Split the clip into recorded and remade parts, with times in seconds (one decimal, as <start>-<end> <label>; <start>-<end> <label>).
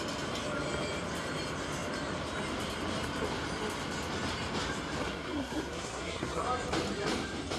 0.0-5.0 recorded; 5.0-6.4 remade; 6.4-7.6 recorded